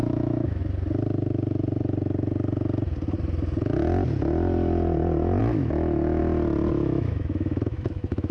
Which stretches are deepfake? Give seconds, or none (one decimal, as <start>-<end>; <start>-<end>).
0.0-0.6; 5.4-6.2; 6.7-8.3